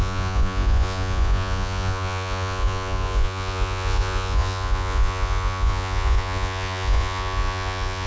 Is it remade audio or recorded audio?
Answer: remade